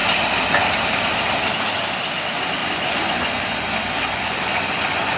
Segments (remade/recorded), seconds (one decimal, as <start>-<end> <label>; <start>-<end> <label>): 0.0-2.6 recorded; 2.6-5.2 remade